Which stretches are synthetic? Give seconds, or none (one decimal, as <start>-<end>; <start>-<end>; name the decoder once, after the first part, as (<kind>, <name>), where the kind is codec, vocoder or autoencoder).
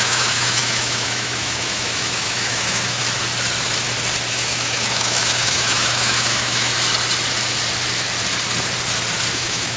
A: 0.0-3.0 (autoencoder, DAC-VAE); 4.3-6.7; 9.3-9.8